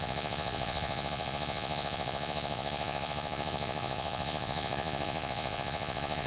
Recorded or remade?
remade